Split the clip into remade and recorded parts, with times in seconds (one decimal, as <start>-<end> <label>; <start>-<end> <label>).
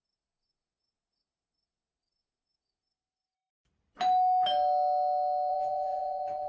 0.0-3.5 remade; 3.5-5.5 recorded; 5.5-6.5 remade